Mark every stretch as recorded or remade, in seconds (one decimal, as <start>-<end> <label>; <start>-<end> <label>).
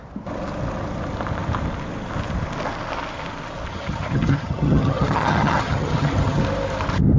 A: 0.0-3.7 recorded; 3.7-6.4 remade; 6.4-7.2 recorded